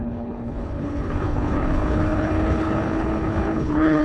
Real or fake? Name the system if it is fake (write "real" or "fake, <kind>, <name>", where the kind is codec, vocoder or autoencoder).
fake, codec, HILCodec